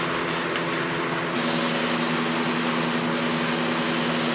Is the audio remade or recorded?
recorded